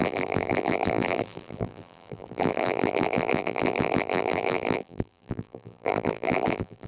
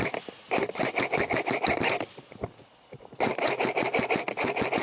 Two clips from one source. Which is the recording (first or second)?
second